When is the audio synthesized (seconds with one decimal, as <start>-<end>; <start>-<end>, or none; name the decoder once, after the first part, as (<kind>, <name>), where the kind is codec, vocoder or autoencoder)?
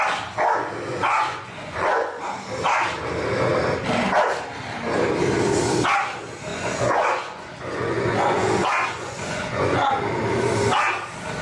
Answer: 0.9-2.2 (vocoder, Vocos); 6.5-9.9